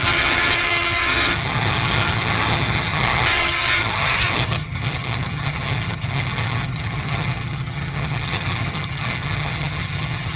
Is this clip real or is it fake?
fake